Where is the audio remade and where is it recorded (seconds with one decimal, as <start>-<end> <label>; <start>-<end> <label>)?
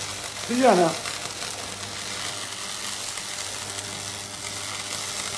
0.0-5.4 recorded